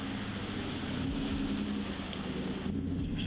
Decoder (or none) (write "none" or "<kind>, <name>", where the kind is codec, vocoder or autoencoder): none